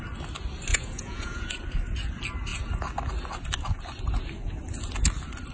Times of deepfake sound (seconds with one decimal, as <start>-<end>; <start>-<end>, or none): 0.7-1.5